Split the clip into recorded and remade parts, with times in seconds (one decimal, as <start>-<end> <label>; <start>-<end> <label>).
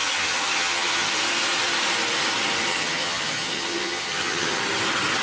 0.0-1.2 remade; 1.2-2.7 recorded; 2.7-4.6 remade; 4.6-5.2 recorded